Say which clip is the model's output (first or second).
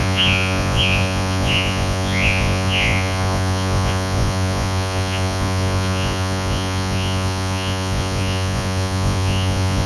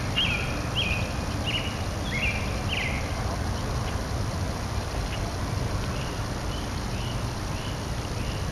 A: first